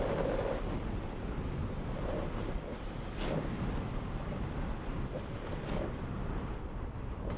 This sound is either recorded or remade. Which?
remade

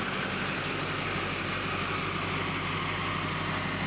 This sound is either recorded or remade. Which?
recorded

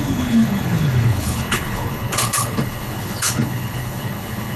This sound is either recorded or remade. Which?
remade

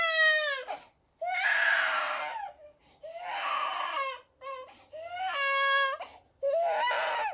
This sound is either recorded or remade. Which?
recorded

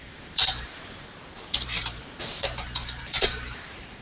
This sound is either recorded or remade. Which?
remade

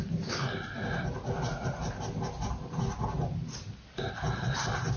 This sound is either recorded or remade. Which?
recorded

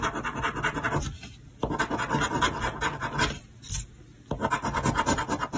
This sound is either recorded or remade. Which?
recorded